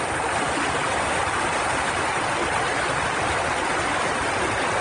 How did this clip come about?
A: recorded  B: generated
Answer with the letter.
A